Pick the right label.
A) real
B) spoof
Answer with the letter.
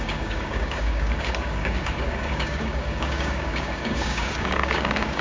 B